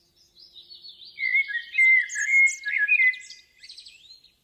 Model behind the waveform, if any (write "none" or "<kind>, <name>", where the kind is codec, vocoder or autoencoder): none